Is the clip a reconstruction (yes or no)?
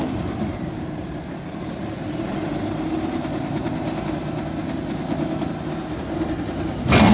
no